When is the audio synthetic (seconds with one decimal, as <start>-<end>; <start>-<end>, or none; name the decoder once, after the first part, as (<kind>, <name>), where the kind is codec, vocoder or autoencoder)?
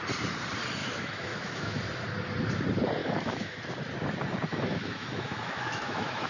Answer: 0.8-1.8 (autoencoder, DAC-VAE); 3.0-3.6; 4.5-6.3